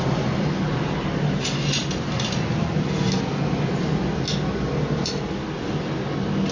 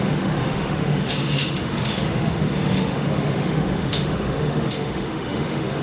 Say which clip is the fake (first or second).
second